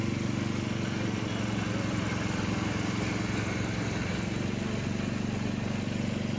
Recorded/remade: recorded